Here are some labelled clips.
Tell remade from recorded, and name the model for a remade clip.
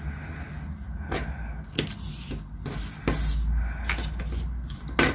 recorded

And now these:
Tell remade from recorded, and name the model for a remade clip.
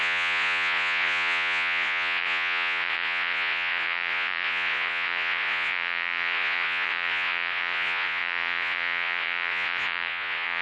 remade, vocoder, Vocos